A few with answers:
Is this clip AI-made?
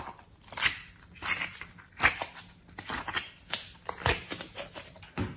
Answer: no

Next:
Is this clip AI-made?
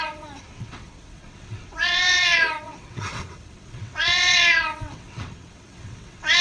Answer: yes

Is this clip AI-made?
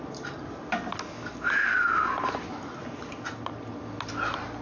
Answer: no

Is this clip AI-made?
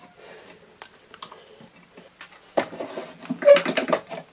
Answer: no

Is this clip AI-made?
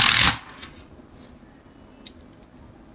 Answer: no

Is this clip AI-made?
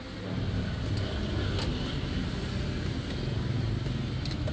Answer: no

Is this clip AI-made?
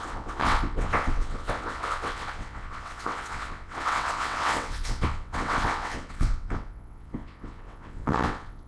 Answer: yes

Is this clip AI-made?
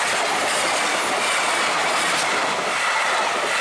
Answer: no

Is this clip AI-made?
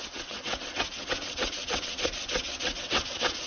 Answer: yes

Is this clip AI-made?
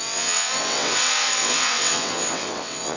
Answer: yes